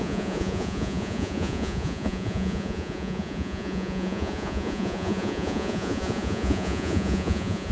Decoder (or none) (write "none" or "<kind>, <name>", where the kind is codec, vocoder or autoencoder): vocoder, Vocos